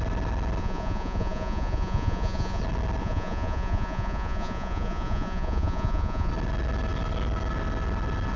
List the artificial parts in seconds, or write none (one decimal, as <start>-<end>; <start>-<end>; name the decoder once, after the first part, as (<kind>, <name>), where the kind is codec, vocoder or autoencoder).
0.6-2.6 (vocoder, Vocos); 3.0-6.3